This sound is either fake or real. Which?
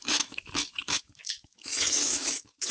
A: fake